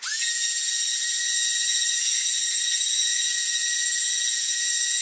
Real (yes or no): no